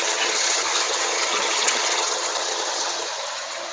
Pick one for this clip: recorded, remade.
remade